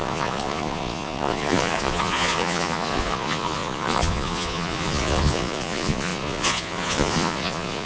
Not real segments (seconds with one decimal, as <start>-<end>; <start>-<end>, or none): 0.0-7.9

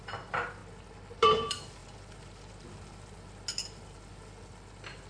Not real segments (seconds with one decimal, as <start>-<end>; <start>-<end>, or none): 0.0-0.6; 1.2-1.8

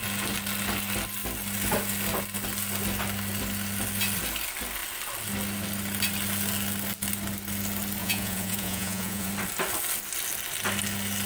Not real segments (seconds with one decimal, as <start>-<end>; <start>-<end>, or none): 8.0-9.3

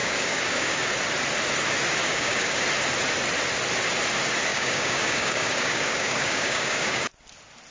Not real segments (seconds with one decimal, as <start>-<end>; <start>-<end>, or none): 0.0-0.9; 2.0-2.6; 4.5-7.1

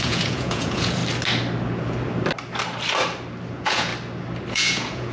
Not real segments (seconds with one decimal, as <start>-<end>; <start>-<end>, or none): 0.0-1.0; 3.5-3.9; 4.5-5.1